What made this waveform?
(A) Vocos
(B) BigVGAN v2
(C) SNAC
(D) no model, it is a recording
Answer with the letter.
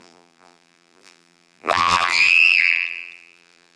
B